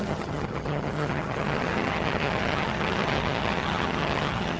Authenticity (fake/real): fake